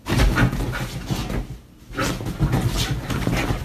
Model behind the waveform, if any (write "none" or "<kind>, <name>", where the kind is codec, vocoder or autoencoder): none